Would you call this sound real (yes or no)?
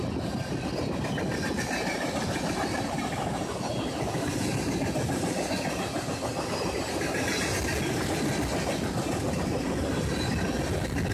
yes